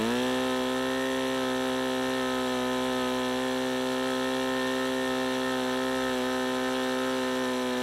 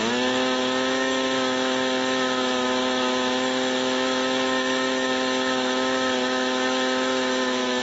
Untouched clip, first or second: first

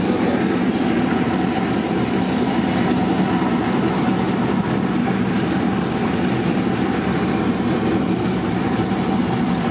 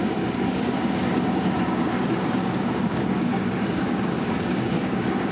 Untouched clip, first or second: first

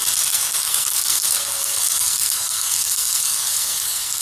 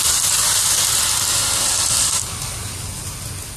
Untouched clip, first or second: second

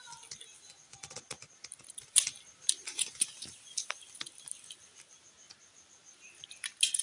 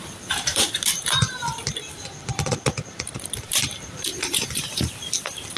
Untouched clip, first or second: first